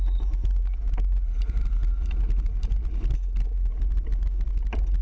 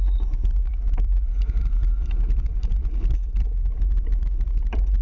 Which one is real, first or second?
first